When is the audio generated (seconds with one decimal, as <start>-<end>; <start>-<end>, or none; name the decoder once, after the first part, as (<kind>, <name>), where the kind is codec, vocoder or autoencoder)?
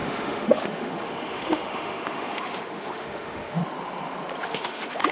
0.0-3.6 (autoencoder, DAC-VAE); 4.4-5.1